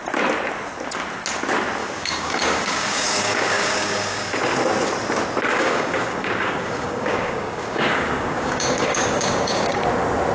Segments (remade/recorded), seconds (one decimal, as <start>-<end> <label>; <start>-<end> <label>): 0.0-1.8 recorded; 1.8-4.3 remade; 4.3-5.5 recorded; 5.5-9.8 remade; 9.8-10.3 recorded